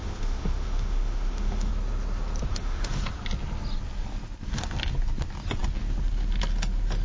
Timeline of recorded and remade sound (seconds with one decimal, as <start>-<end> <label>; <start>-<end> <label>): 0.0-1.7 remade; 1.7-2.5 recorded; 2.5-3.0 remade; 3.0-7.0 recorded